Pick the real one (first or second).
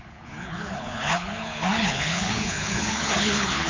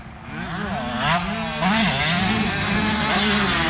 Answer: second